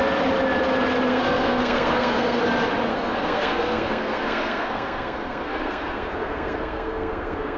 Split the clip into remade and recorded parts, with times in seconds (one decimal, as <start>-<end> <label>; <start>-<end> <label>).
0.0-1.1 recorded; 1.1-2.4 remade; 2.4-2.9 recorded; 2.9-7.6 remade